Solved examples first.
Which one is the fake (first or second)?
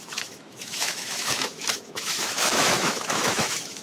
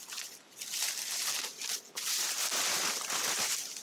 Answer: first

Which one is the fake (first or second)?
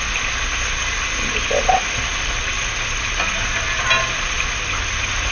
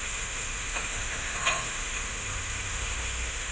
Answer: second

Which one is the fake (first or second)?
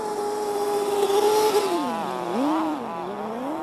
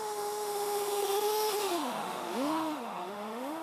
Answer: second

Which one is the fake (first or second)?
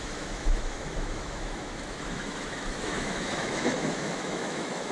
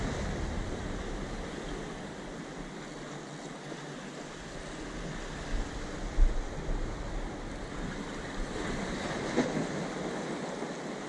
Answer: first